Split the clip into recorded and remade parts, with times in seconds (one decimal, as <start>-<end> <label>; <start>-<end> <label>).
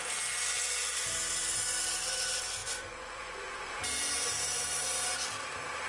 0.0-2.6 recorded; 2.6-3.8 remade; 3.8-5.9 recorded